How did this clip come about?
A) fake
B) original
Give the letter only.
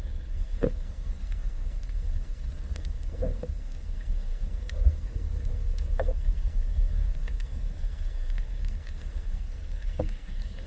A